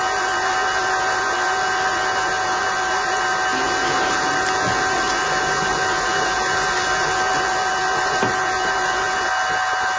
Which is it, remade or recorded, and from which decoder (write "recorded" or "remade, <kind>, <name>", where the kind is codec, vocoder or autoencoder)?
recorded